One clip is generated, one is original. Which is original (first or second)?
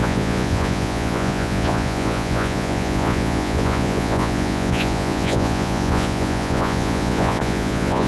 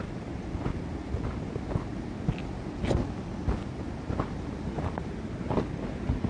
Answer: second